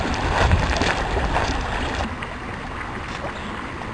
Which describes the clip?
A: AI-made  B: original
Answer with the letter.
B